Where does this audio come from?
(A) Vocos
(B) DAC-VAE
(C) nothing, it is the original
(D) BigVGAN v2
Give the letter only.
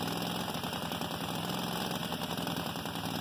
D